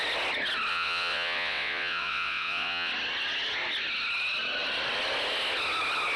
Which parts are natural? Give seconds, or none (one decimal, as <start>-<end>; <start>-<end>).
0.0-0.7; 2.9-6.2